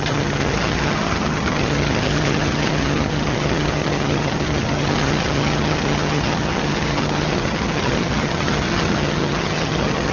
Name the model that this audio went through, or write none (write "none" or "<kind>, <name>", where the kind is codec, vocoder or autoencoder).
vocoder, HiFi-GAN